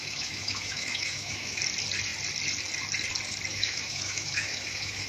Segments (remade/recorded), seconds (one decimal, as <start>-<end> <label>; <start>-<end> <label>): 0.0-1.6 remade; 1.6-3.5 recorded; 3.5-5.1 remade